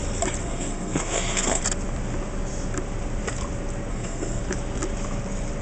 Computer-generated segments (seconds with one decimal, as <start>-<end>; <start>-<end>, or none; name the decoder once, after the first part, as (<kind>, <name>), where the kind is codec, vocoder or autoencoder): 0.4-1.6 (codec, SNAC); 3.9-4.4